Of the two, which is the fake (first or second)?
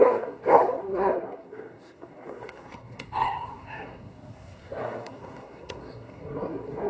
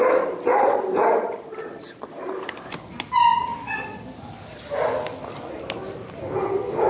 first